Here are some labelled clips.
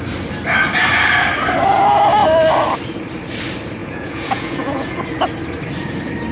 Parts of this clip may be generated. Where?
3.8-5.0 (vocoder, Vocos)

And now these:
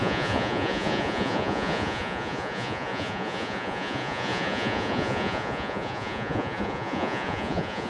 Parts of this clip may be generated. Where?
0.0-7.9 (vocoder, Vocos)

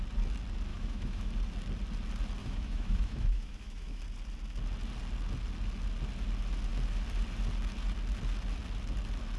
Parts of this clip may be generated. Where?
0.7-1.3 (autoencoder, DAC-VAE); 2.4-4.0